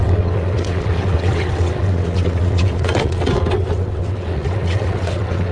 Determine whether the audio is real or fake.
fake